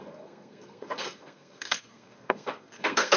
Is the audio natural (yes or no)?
no